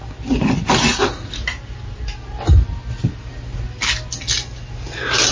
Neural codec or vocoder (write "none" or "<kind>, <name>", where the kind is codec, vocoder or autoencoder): none